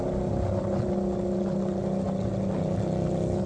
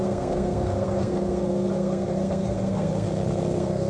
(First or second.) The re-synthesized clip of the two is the second